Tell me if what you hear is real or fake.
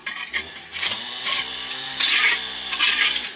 fake